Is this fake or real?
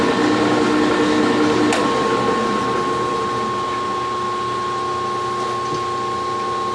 real